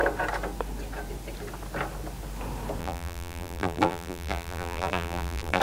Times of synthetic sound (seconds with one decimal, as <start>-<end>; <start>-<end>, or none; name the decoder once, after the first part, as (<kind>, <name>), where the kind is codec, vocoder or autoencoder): 2.8-5.6 (vocoder, BigVGAN v2)